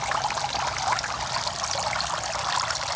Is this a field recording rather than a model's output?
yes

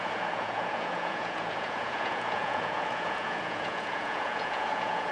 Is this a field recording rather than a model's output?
no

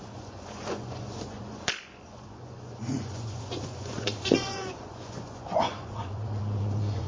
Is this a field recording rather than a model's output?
no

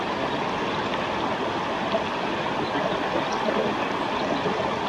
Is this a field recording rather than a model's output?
yes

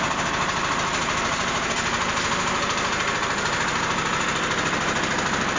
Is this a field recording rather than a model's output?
yes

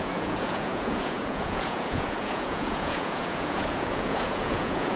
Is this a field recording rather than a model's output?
no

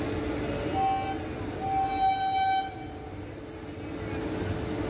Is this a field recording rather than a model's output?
yes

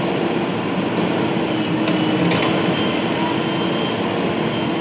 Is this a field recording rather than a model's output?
yes